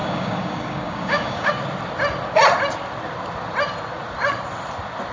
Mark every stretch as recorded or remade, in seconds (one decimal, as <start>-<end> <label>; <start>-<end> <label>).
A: 0.0-1.5 remade; 1.5-5.1 recorded